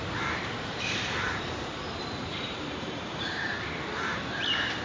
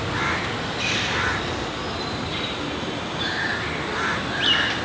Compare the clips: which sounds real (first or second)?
second